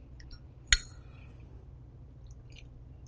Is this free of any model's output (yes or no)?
yes